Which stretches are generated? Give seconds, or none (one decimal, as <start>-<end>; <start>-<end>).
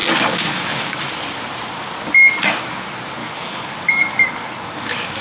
0.0-1.0; 3.2-5.2